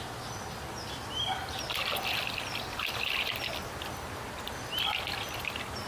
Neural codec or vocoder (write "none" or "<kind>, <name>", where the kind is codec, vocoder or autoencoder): none